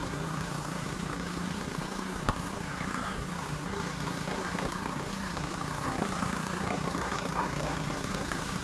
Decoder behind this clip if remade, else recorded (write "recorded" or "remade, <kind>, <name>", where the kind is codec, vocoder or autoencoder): remade, codec, SNAC